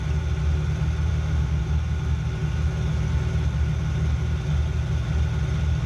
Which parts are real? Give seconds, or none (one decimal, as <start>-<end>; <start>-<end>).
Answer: 0.0-1.1; 1.6-5.9